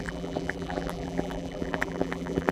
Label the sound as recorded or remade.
remade